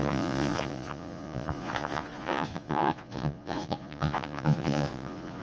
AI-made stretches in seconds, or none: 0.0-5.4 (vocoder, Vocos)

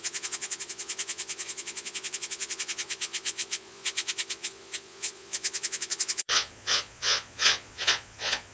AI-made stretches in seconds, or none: 0.0-8.5 (vocoder, Vocos)